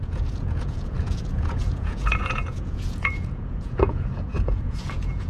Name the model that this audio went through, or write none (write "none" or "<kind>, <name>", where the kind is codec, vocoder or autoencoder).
vocoder, Vocos